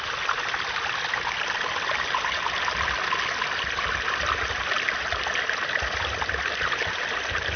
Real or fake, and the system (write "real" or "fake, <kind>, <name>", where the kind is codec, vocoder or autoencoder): real